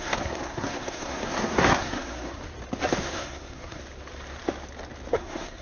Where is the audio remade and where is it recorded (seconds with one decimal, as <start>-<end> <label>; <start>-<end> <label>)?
0.0-2.4 remade; 2.4-3.0 recorded; 3.0-3.8 remade; 3.8-5.1 recorded; 5.1-5.6 remade